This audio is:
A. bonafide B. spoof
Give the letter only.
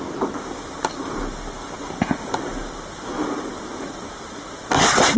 A